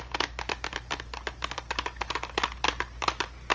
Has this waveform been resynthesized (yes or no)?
no